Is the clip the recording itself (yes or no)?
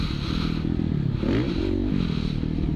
yes